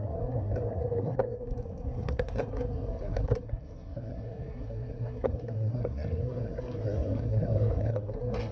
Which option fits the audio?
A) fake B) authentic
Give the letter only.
A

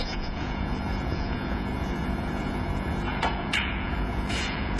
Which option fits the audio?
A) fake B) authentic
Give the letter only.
A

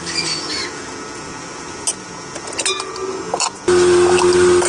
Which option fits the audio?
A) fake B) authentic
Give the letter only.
B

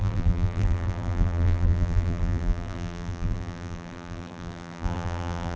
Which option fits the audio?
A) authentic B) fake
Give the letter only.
B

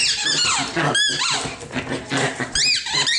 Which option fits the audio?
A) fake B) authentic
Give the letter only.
B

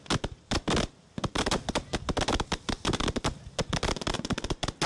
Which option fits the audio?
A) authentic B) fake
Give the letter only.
A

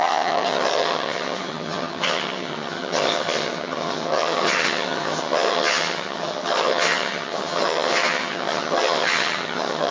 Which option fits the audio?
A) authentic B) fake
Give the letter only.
B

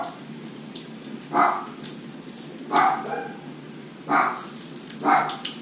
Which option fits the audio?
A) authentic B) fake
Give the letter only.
A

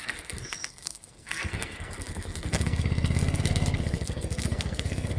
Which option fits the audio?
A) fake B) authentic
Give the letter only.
A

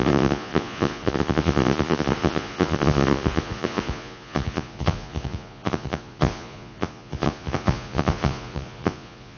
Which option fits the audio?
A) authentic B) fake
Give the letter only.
B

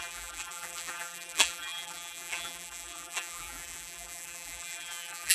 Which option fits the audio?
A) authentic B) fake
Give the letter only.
B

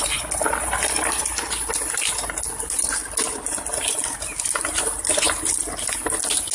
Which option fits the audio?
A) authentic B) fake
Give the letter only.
A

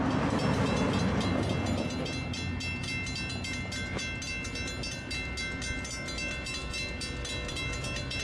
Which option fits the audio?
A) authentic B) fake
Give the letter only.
A